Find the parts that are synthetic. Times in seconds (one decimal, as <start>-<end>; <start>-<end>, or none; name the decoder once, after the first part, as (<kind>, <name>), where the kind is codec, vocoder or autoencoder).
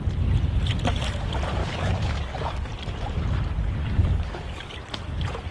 1.6-2.7 (codec, DAC); 3.8-4.7